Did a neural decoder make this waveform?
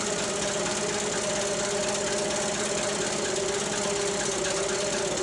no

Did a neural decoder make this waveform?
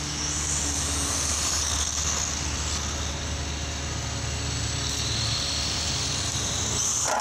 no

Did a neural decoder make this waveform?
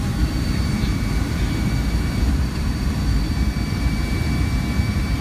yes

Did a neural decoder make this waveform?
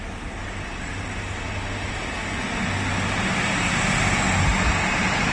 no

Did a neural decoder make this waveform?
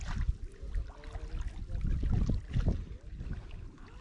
no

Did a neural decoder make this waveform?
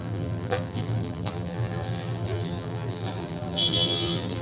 yes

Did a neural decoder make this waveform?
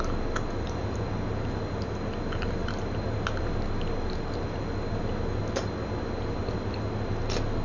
no